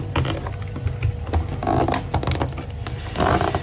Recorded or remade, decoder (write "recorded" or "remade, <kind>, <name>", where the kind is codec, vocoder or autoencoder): recorded